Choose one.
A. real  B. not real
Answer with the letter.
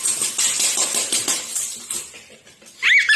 A